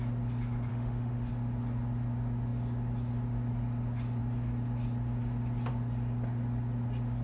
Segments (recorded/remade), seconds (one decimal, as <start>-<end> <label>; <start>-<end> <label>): 0.0-0.7 recorded; 0.7-1.3 remade; 1.3-7.2 recorded